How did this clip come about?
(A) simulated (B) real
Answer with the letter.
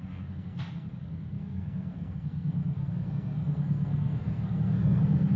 A